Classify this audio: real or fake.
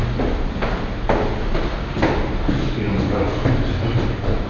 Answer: real